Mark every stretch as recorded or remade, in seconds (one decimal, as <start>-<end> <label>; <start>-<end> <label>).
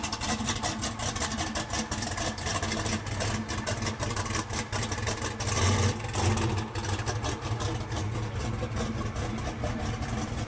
0.0-10.5 recorded